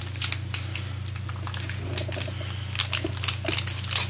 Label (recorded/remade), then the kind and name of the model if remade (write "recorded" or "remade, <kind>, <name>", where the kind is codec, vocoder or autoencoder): recorded